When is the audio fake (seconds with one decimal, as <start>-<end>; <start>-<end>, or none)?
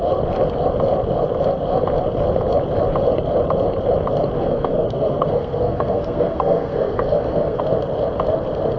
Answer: 4.4-7.6